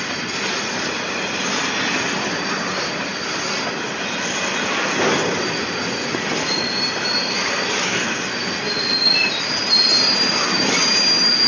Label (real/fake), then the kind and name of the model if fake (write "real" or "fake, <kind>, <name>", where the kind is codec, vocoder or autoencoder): real